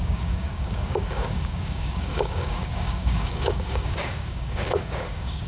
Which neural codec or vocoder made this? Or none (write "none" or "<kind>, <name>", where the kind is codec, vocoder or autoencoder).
codec, DAC